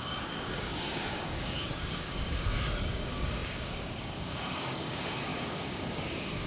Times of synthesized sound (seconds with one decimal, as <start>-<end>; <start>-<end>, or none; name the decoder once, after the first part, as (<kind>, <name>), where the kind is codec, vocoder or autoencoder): 0.0-6.5 (codec, DAC)